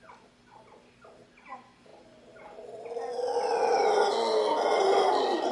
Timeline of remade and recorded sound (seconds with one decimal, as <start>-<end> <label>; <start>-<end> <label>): 0.0-5.5 recorded